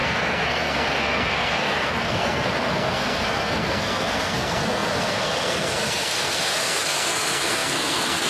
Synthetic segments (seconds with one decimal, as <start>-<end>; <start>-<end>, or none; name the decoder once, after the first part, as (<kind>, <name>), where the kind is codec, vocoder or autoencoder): 0.0-8.3 (codec, SNAC)